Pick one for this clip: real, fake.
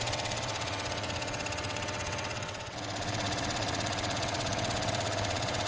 fake